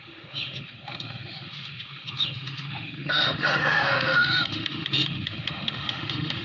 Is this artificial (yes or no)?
yes